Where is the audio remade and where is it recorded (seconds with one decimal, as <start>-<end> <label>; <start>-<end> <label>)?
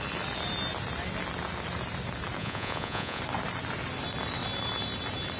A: 0.0-2.4 recorded; 2.4-3.2 remade; 3.2-5.4 recorded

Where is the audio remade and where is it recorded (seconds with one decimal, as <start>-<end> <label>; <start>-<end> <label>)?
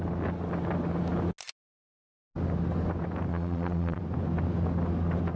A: 0.0-3.3 recorded; 3.3-4.0 remade; 4.0-5.4 recorded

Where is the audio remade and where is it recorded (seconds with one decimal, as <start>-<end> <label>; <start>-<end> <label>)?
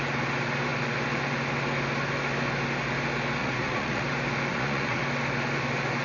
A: 0.0-3.4 recorded; 3.4-4.0 remade; 4.0-4.5 recorded; 4.5-5.0 remade; 5.0-6.0 recorded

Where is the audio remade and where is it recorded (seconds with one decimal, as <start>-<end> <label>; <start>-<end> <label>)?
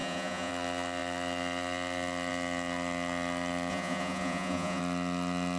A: 0.0-0.5 remade; 0.5-3.7 recorded; 3.7-4.8 remade; 4.8-5.6 recorded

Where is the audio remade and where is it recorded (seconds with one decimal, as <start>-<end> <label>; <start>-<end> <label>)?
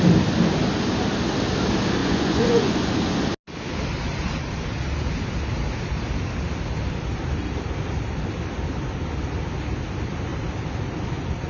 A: 0.0-2.0 recorded; 2.0-2.9 remade; 2.9-11.5 recorded